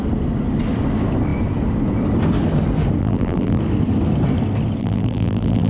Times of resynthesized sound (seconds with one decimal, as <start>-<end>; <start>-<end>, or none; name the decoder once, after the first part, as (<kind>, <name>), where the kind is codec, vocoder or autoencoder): 3.0-3.6 (vocoder, BigVGAN v2); 4.8-5.7